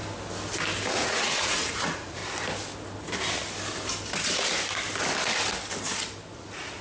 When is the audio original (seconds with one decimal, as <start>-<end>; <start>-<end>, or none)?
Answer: 0.0-0.9; 2.2-6.3